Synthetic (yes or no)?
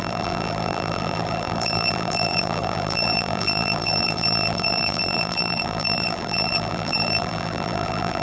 yes